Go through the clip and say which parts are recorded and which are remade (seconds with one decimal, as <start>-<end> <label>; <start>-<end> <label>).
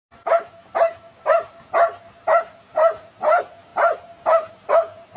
0.0-5.2 recorded